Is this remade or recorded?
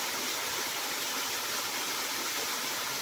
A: recorded